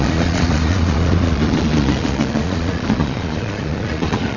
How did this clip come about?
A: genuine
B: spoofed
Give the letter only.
B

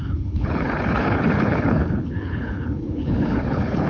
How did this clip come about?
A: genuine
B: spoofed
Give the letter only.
B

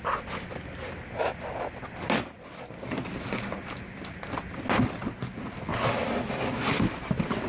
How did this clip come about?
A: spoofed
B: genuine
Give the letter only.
B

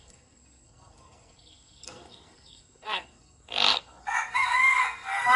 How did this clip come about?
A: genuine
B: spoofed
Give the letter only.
B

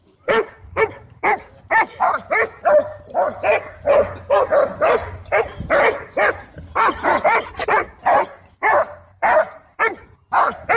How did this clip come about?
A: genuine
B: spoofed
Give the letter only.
B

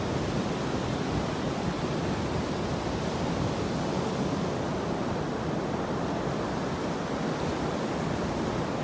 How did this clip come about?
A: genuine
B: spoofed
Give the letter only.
A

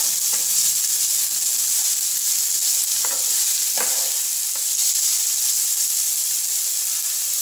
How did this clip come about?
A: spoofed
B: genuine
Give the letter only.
B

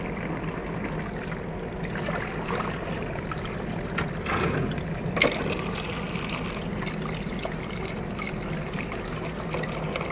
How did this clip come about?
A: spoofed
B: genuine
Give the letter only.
B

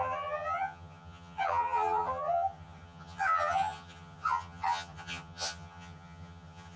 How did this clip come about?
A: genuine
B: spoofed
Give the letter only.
B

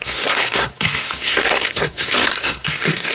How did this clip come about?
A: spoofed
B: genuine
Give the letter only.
A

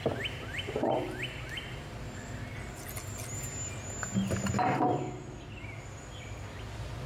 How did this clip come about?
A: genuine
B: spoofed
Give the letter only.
A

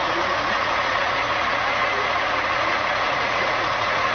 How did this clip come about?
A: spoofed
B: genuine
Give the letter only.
A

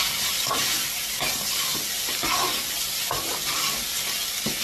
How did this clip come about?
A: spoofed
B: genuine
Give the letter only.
B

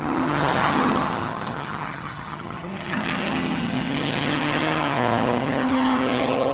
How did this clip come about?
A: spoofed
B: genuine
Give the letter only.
A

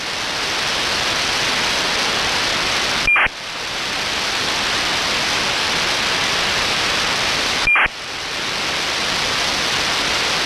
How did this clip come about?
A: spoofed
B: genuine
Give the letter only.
B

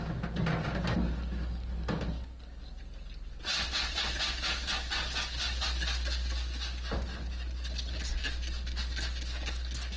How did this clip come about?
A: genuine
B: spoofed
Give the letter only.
A